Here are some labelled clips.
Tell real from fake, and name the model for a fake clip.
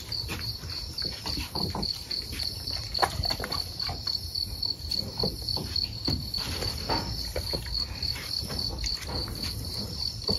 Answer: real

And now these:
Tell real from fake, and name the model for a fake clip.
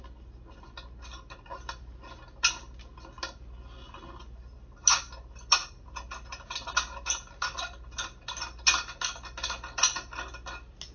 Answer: real